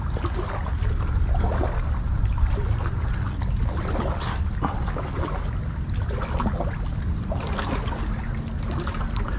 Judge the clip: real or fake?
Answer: real